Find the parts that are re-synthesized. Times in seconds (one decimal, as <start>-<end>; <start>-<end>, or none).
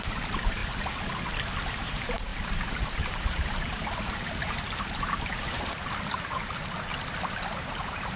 0.0-0.6; 1.8-6.9; 7.5-8.2